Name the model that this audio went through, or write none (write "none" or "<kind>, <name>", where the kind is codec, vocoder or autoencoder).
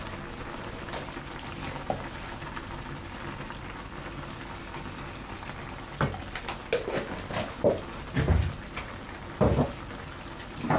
none